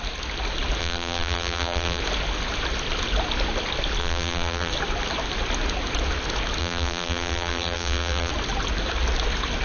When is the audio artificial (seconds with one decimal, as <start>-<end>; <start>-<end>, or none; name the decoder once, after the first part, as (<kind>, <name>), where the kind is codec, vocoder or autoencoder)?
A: 0.8-2.0 (vocoder, BigVGAN v2); 4.0-4.7; 6.6-8.3